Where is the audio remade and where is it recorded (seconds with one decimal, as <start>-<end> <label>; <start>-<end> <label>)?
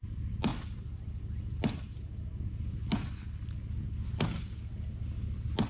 0.0-5.7 recorded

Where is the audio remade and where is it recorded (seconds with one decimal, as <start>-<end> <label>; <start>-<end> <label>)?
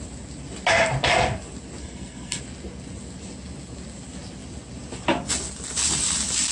0.0-1.8 recorded; 1.8-2.4 remade; 2.4-6.5 recorded